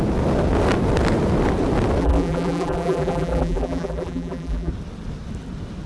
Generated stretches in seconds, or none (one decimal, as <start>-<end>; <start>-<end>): 2.0-4.7